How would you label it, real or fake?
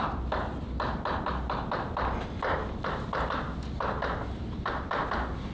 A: real